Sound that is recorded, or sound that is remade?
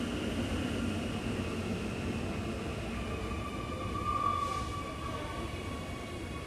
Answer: recorded